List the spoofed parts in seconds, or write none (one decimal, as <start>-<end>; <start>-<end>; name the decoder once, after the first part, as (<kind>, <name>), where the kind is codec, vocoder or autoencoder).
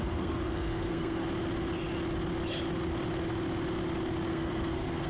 0.0-1.2 (codec, SNAC); 4.3-5.1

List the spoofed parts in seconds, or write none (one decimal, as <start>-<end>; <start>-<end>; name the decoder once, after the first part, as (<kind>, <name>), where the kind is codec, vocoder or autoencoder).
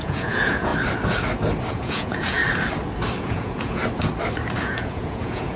0.0-0.7 (vocoder, Vocos); 1.7-2.4; 3.2-3.8; 4.6-5.6